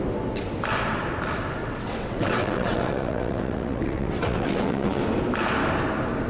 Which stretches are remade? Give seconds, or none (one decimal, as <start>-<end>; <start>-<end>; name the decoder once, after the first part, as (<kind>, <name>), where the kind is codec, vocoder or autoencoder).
1.6-5.0 (vocoder, WaveNeXt)